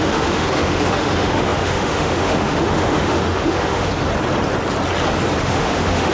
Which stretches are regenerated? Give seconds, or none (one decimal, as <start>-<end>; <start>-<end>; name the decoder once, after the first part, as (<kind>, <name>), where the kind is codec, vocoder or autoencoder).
0.0-3.9 (autoencoder, DAC-VAE); 5.4-6.1

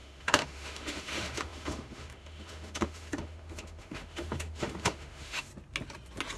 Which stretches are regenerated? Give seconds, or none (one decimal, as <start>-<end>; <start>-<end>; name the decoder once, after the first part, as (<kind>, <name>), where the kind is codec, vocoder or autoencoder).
0.0-5.5 (autoencoder, DAC-VAE)

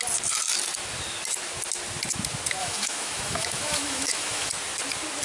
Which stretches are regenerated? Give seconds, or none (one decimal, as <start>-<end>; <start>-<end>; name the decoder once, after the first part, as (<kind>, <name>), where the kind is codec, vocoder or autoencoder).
2.6-4.5 (autoencoder, DAC-VAE)

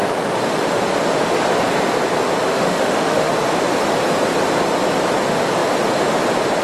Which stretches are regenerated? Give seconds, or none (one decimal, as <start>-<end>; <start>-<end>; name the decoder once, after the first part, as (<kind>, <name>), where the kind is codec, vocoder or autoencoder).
2.5-3.3 (autoencoder, DAC-VAE)

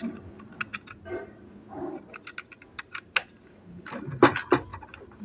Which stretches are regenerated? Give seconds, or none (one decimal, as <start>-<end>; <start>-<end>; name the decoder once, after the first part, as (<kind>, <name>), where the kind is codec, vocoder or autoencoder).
none